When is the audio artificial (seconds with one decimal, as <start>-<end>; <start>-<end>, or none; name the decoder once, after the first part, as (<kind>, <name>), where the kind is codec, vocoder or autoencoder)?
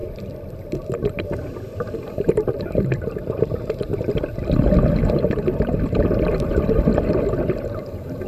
0.0-3.5 (vocoder, BigVGAN v2); 3.9-7.0